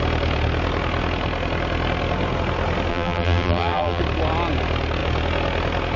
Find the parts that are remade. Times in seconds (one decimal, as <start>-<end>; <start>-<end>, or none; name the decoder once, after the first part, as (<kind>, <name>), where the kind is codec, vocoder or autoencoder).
2.9-4.0 (vocoder, BigVGAN v2)